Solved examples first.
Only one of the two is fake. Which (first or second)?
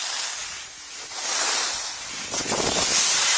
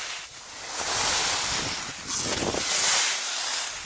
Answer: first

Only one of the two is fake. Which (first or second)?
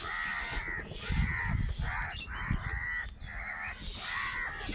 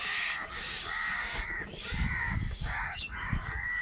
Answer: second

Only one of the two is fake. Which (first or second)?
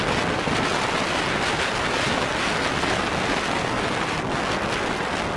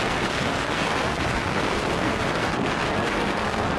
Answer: second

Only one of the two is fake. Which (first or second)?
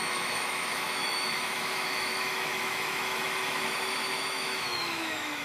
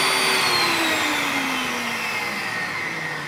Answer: first